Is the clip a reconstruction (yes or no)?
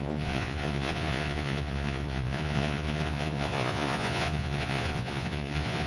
yes